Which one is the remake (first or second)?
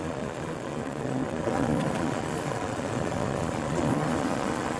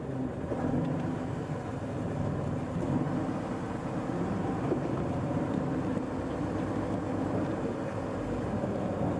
first